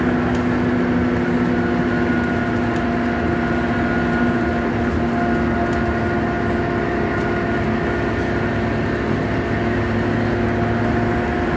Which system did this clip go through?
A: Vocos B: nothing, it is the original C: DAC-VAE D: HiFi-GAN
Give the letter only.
B